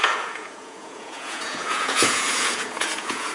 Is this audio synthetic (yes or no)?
yes